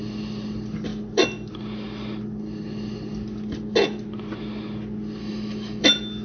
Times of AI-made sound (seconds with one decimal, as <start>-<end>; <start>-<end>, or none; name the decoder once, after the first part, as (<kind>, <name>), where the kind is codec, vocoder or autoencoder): 5.2-5.8 (autoencoder, DAC-VAE)